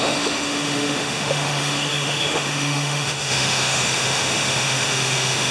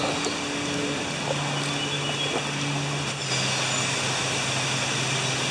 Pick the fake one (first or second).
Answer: first